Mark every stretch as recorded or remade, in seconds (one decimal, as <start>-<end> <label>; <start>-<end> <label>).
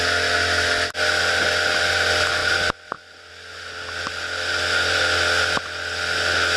0.0-6.6 recorded